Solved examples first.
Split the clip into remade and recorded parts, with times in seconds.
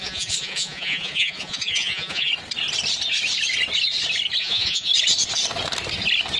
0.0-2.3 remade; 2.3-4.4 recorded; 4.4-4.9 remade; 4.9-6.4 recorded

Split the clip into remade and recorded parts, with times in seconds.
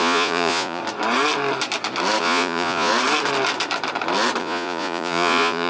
0.0-0.8 remade; 0.8-2.2 recorded; 2.2-2.9 remade; 2.9-4.4 recorded; 4.4-5.7 remade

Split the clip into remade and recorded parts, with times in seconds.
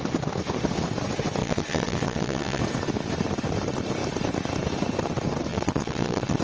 0.0-1.4 recorded; 1.4-2.6 remade; 2.6-5.5 recorded; 5.5-6.4 remade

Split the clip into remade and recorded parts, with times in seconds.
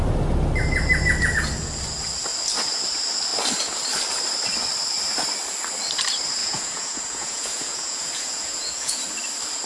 0.0-6.4 recorded; 6.4-9.0 remade; 9.0-9.7 recorded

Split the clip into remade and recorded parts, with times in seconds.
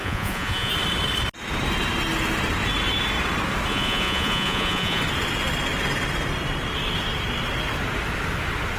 0.0-0.7 remade; 0.7-3.7 recorded; 3.7-5.0 remade; 5.0-8.8 recorded